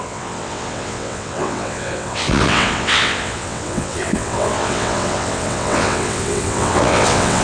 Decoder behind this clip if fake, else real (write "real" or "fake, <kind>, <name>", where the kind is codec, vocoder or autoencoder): fake, vocoder, WaveNeXt